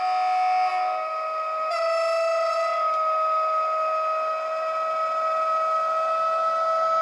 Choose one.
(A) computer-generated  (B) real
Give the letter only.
B